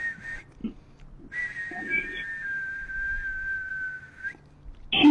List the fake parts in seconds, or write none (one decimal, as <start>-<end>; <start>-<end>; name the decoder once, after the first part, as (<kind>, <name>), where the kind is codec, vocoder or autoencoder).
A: none